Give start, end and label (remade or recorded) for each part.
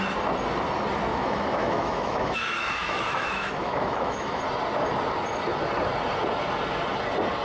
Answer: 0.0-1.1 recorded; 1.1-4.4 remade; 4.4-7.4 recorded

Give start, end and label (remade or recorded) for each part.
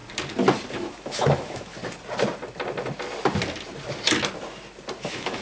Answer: 0.0-0.7 recorded; 0.7-1.8 remade; 1.8-5.0 recorded; 5.0-5.4 remade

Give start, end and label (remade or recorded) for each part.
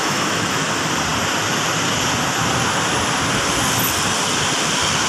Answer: 0.0-0.6 remade; 0.6-5.1 recorded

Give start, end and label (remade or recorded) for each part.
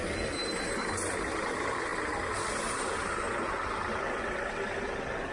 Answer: 0.0-5.3 recorded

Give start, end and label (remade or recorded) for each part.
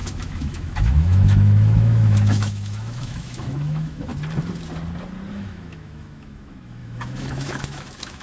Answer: 0.0-4.1 remade; 4.1-5.3 recorded; 5.3-8.2 remade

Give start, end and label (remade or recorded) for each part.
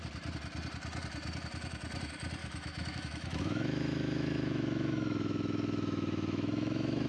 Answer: 0.0-2.4 recorded; 2.4-7.1 remade